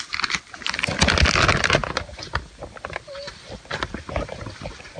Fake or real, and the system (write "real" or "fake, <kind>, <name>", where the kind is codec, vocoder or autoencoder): real